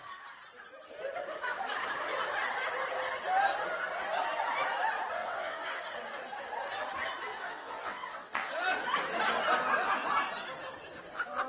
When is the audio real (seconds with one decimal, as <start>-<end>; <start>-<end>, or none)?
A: 0.0-5.2; 5.8-7.3; 8.5-11.5